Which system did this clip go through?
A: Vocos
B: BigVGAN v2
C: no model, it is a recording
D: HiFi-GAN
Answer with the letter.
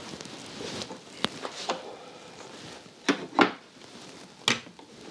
C